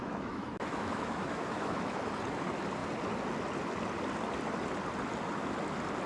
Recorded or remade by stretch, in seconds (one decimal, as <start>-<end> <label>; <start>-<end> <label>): 0.0-2.1 remade; 2.1-6.1 recorded